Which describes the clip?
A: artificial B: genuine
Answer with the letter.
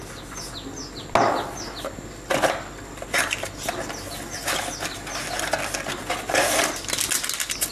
B